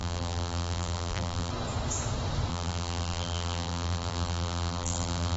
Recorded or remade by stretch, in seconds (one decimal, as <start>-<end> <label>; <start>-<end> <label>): 0.0-1.5 remade; 1.5-2.5 recorded; 2.5-5.4 remade